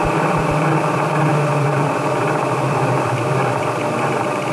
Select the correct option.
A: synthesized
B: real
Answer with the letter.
A